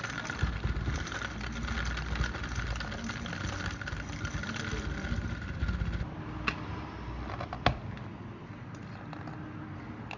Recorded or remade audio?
recorded